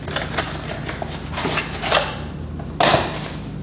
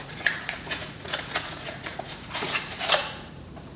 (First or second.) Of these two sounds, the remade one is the second